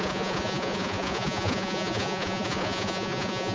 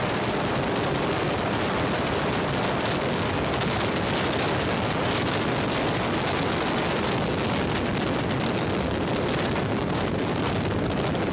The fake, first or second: first